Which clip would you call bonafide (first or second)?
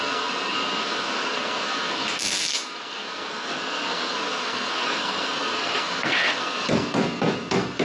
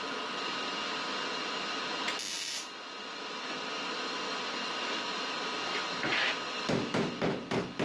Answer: second